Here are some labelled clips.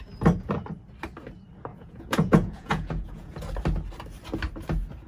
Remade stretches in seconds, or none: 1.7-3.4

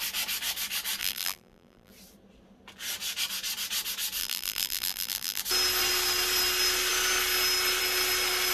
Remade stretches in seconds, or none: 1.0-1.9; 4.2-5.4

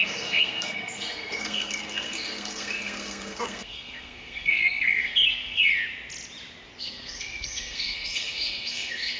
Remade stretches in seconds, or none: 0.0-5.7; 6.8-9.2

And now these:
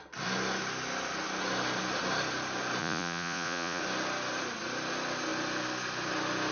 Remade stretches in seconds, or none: 2.8-3.8

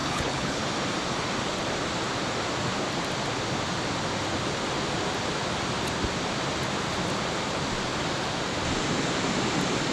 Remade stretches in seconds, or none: 0.0-0.6

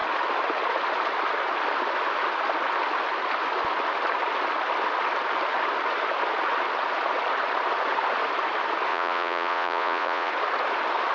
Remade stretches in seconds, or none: 8.9-10.3

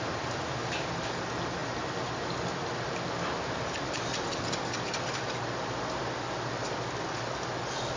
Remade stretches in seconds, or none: none

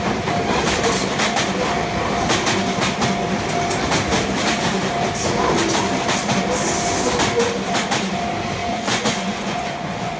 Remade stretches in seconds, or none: 8.6-10.2